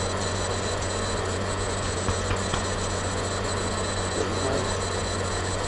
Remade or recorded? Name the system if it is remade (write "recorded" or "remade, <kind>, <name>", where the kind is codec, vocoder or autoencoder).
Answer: remade, vocoder, Vocos